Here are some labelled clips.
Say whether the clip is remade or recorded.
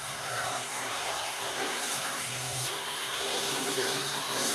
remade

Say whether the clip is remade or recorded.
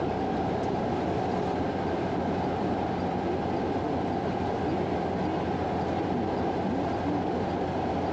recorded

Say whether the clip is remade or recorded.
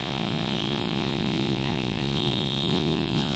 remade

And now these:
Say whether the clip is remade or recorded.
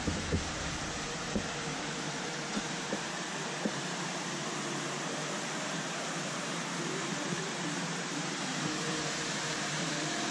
remade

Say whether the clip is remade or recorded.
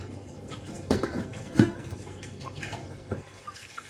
remade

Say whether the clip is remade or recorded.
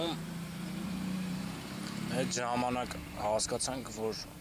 remade